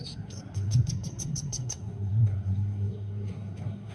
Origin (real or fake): fake